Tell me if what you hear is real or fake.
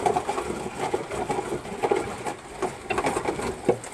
real